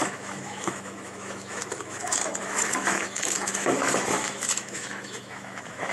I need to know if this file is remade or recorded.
remade